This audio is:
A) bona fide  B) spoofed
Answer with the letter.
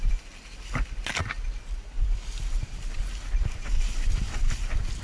A